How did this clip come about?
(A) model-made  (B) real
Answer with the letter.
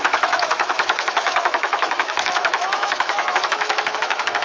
A